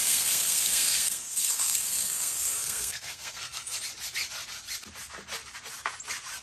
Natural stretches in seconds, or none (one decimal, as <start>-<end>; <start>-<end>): 3.8-6.4